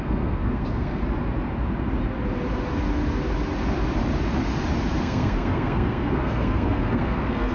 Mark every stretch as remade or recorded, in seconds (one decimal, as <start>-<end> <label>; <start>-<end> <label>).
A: 0.0-1.0 remade; 1.0-5.0 recorded; 5.0-7.5 remade